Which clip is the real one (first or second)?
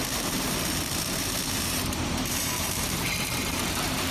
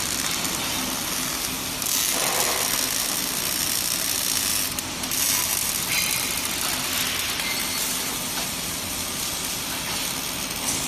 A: second